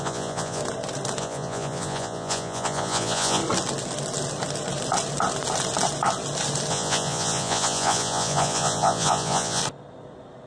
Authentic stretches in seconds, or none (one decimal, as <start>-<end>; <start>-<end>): 0.6-1.2; 3.4-6.7; 9.6-10.5